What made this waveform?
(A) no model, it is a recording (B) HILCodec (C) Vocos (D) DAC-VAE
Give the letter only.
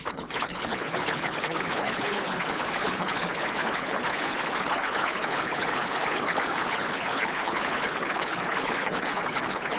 B